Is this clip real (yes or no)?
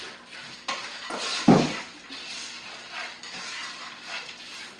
yes